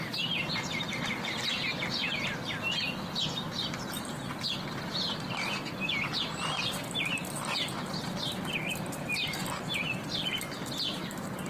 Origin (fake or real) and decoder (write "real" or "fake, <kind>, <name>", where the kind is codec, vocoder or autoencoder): real